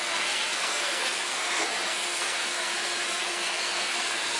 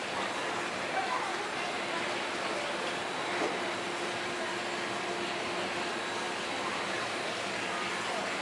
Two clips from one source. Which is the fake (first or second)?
first